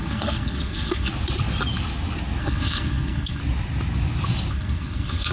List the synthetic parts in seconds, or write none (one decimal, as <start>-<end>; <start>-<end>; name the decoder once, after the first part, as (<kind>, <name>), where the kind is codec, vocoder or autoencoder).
0.0-1.1 (codec, SNAC); 2.4-3.4; 4.5-5.3